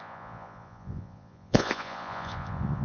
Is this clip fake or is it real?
fake